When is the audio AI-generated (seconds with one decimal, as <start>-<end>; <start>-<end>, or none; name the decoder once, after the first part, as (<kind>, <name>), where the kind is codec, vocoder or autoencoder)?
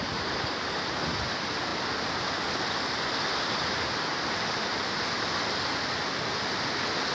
none